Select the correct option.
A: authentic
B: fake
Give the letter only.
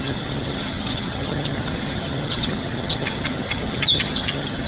B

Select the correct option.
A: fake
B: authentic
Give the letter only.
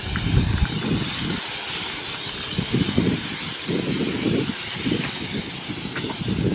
B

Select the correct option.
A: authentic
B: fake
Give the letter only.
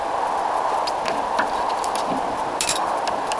A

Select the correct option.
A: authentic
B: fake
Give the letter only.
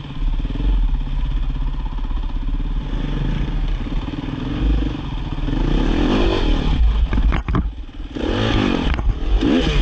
A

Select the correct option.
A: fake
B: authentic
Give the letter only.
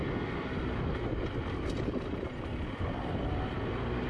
B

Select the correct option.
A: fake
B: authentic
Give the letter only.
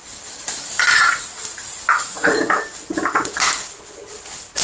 B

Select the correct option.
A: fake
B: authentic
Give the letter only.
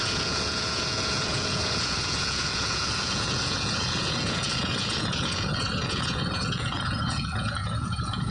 A